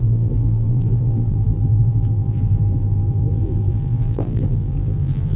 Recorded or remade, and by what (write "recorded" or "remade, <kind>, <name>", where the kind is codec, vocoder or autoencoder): remade, vocoder, BigVGAN v2